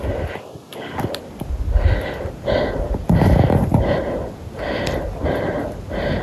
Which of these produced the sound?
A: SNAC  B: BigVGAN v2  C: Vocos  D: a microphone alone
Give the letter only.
D